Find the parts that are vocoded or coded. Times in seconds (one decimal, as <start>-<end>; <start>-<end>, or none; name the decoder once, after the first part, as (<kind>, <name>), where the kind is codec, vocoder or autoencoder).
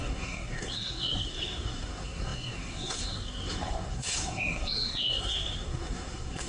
0.0-6.5 (codec, SNAC)